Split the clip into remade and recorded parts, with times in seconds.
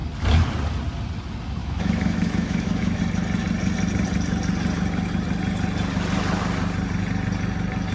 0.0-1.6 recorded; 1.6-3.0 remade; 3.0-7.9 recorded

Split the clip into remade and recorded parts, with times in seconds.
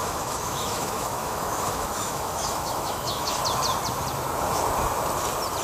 0.0-3.4 remade; 3.4-5.6 recorded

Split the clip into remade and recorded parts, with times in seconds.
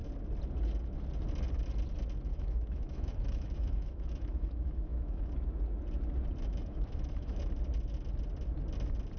0.0-2.3 recorded; 2.3-5.3 remade; 5.3-6.5 recorded; 6.5-7.4 remade; 7.4-9.2 recorded